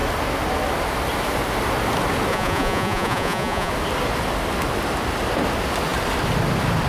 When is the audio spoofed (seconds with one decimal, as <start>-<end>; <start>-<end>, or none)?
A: 2.3-3.7